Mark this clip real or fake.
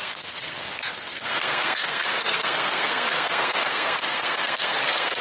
fake